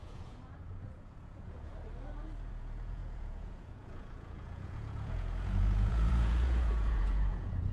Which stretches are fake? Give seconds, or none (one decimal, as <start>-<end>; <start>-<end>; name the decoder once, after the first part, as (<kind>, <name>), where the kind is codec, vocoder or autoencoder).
0.0-1.7 (vocoder, Vocos); 2.5-7.7